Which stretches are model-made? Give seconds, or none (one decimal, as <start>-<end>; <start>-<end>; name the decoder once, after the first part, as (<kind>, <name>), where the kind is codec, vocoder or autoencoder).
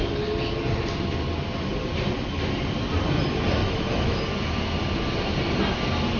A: 3.6-4.2 (autoencoder, DAC-VAE)